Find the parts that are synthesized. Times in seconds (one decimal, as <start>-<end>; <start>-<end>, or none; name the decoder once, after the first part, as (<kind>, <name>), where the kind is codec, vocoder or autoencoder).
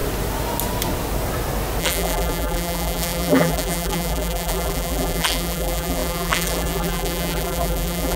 1.8-8.2 (vocoder, BigVGAN v2)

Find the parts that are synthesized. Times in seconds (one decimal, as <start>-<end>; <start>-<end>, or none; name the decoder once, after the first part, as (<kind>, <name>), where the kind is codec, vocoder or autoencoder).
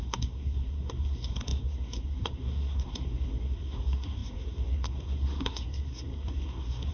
0.0-6.9 (codec, SNAC)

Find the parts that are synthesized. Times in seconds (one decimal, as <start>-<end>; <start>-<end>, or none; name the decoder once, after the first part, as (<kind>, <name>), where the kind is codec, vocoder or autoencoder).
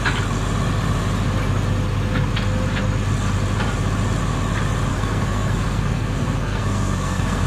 4.9-7.5 (codec, SNAC)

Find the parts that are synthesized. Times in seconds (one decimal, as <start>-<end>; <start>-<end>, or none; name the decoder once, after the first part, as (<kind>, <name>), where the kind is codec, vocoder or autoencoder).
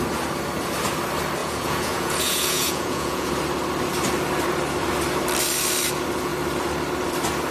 1.4-3.3 (vocoder, Vocos)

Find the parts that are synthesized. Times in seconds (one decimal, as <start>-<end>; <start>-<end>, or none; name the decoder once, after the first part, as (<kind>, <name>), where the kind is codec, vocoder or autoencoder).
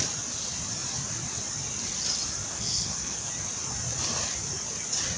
2.5-3.3 (codec, SNAC)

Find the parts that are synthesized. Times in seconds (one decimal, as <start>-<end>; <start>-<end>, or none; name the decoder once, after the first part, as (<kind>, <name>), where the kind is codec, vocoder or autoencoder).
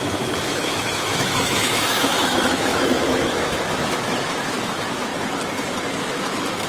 0.0-5.1 (autoencoder, DAC-VAE); 6.0-6.7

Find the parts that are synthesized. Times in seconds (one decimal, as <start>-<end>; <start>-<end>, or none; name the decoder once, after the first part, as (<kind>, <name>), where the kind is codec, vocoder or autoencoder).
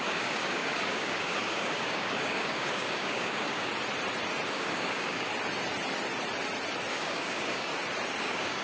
0.0-3.7 (codec, DAC); 4.5-5.3; 6.9-7.7; 8.2-8.6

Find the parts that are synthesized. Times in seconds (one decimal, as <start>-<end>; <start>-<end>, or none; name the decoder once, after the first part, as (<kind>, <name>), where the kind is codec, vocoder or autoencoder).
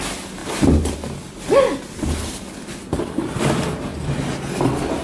0.0-3.9 (vocoder, BigVGAN v2); 4.5-5.0